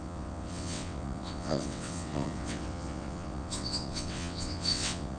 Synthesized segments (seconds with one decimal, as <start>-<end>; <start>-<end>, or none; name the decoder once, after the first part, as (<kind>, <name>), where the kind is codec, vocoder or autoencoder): 0.0-5.2 (vocoder, WaveNeXt)